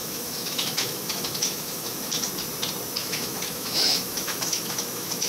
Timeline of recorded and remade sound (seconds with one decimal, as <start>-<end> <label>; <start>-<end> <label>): 0.0-2.1 remade; 2.1-3.0 recorded; 3.0-5.3 remade